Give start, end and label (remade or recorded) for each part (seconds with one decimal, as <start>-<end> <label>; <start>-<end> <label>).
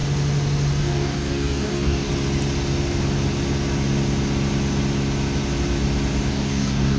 0.0-0.8 recorded; 0.8-2.1 remade; 2.1-6.3 recorded; 6.3-7.0 remade